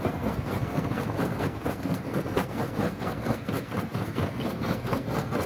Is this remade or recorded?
remade